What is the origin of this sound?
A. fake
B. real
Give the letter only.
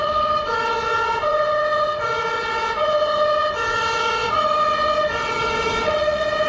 A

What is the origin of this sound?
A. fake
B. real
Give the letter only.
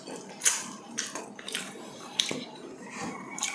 A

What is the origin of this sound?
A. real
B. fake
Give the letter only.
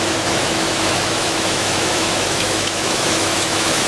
B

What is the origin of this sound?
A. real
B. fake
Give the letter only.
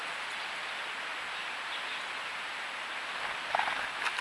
A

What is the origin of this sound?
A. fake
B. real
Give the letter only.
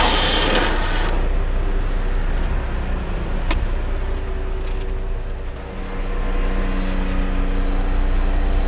B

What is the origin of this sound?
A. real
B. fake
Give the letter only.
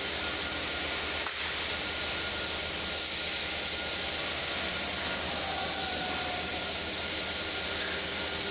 A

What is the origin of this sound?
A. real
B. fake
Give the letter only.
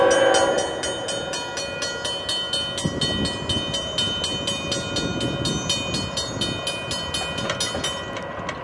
A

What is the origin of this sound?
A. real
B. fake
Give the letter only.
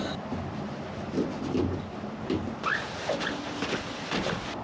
A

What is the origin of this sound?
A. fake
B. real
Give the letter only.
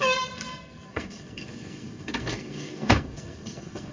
A